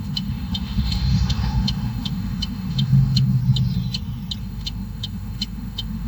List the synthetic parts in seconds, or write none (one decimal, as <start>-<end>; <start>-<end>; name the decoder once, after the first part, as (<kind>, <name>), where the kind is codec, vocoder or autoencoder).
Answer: 0.0-3.4 (autoencoder, DAC-VAE); 4.4-6.1